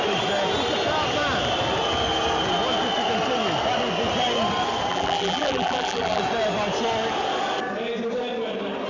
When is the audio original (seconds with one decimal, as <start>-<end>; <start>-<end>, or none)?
0.0-4.9; 6.2-8.9